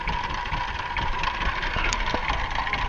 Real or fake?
fake